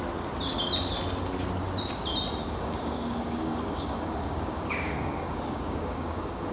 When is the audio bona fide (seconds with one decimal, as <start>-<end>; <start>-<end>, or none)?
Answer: 0.0-2.4